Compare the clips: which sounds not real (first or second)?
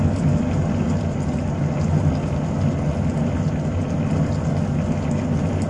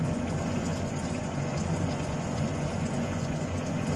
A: second